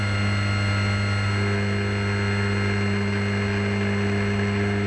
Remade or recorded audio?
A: recorded